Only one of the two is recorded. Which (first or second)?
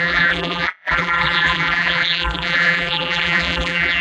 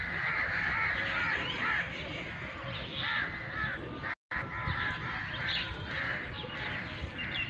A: second